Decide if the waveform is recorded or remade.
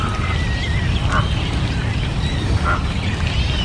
recorded